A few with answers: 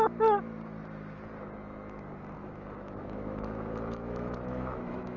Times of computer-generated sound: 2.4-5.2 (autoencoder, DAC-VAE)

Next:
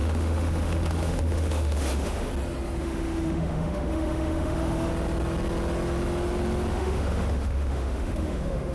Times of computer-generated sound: 0.0-2.3 (autoencoder, DAC-VAE); 2.8-4.9; 6.7-8.7

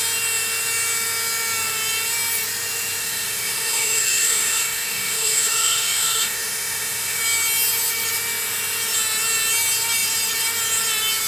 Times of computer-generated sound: 3.0-7.2 (autoencoder, DAC-VAE)

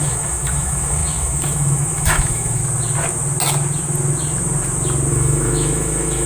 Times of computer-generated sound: 0.0-2.6 (autoencoder, DAC-VAE); 5.1-6.3